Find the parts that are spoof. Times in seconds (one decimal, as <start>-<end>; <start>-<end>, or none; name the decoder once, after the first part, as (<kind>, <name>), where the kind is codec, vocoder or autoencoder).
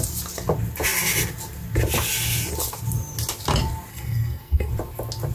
3.9-4.7 (codec, SNAC)